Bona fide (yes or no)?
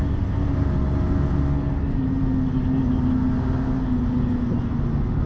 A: yes